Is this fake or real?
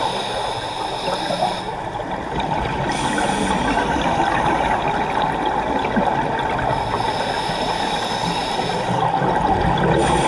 real